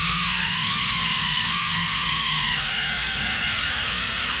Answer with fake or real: fake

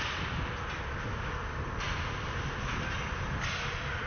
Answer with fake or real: real